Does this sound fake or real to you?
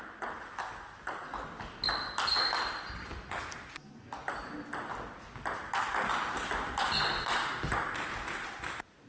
real